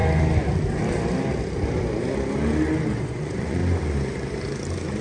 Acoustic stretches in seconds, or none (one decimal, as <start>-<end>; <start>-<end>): 0.0-3.0; 3.6-5.0